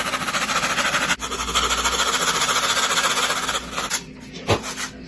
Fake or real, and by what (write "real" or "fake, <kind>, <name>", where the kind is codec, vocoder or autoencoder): real